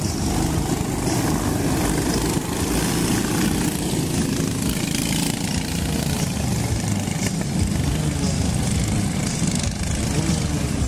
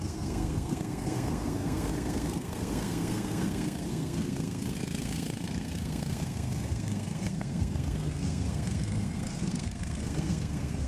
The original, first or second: first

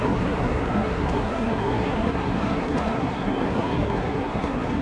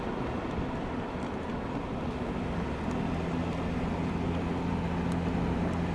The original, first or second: second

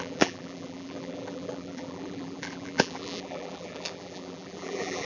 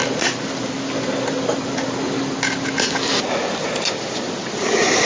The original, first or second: second